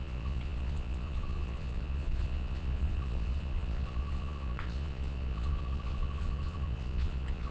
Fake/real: fake